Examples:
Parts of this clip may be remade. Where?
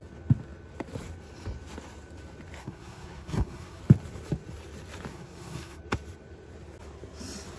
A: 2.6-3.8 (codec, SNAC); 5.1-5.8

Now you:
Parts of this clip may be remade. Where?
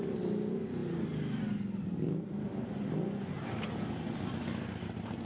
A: none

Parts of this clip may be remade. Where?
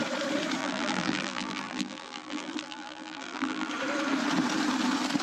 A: 0.6-3.7 (vocoder, BigVGAN v2)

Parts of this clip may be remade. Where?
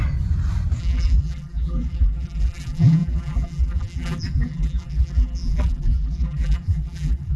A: 0.8-7.4 (vocoder, BigVGAN v2)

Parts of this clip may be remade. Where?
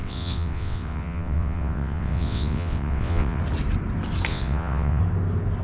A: 0.0-3.4 (vocoder, WaveNeXt); 4.3-5.0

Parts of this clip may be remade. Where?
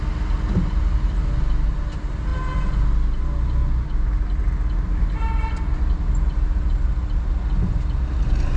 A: none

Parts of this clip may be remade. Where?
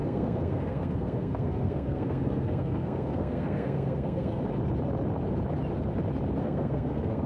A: 0.0-4.4 (codec, SNAC); 6.4-7.3